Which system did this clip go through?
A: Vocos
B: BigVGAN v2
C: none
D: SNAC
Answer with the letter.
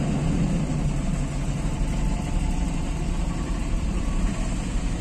C